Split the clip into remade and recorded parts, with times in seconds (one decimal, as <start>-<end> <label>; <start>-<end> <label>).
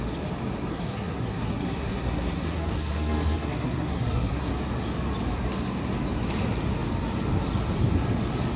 0.0-0.7 recorded; 0.7-4.5 remade; 4.5-8.6 recorded